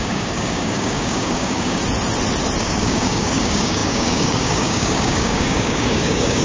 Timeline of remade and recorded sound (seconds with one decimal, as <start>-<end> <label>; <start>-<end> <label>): 0.0-1.8 remade; 1.8-2.6 recorded; 2.6-6.4 remade